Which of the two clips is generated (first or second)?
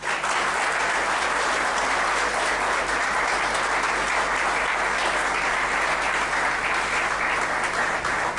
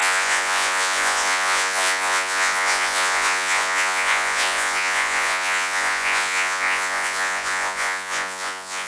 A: second